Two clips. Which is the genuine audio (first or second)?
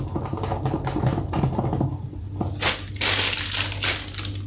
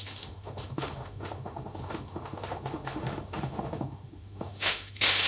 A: first